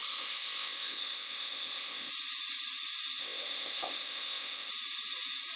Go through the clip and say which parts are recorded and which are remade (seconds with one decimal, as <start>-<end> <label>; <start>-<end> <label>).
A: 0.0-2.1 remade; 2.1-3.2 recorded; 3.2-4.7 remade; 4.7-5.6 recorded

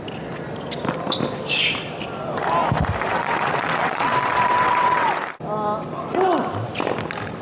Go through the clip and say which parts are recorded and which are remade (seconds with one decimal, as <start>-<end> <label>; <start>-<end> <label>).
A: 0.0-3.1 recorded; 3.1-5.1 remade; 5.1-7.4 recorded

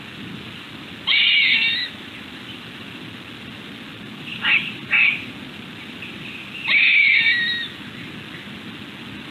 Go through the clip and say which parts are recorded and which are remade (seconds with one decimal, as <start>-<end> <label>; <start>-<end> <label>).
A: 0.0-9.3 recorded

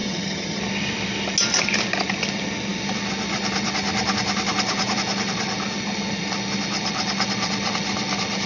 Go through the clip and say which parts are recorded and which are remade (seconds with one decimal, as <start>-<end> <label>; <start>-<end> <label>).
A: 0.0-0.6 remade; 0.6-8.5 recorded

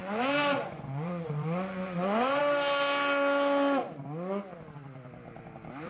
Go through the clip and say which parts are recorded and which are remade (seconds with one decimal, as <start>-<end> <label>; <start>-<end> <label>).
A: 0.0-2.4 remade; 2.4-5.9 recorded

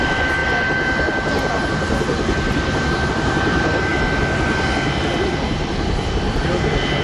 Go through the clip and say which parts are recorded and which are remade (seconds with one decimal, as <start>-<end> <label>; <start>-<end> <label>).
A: 0.0-0.4 remade; 0.4-3.1 recorded; 3.1-3.9 remade; 3.9-7.0 recorded

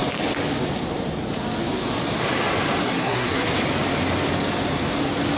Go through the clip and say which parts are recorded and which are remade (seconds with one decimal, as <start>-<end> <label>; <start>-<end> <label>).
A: 0.0-2.8 recorded; 2.8-3.5 remade; 3.5-5.4 recorded